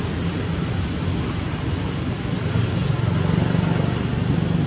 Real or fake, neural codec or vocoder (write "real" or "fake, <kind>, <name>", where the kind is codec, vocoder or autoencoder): real